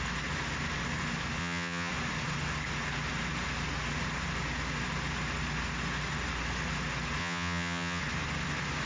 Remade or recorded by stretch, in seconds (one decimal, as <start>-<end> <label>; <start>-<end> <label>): 0.0-1.4 recorded; 1.4-1.9 remade; 1.9-7.2 recorded; 7.2-8.0 remade; 8.0-8.9 recorded